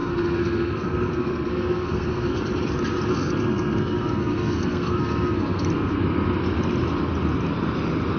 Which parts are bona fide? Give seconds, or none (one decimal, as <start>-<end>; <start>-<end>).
2.4-3.1; 6.0-8.2